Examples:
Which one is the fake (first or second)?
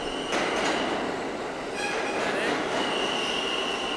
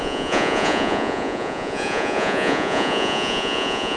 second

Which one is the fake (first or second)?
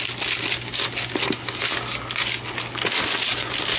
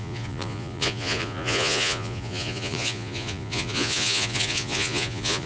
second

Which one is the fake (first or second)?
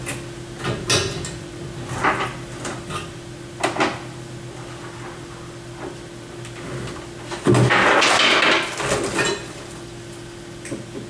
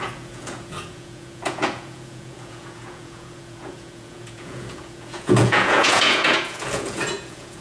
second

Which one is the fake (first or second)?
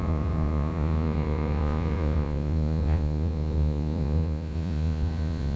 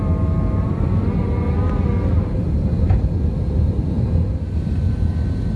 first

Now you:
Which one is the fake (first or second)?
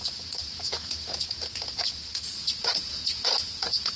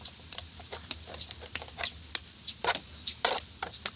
first